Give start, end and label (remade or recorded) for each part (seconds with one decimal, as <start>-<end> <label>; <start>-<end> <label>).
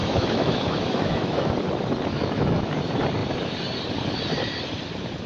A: 0.0-1.5 remade; 1.5-2.1 recorded; 2.1-2.7 remade; 2.7-5.3 recorded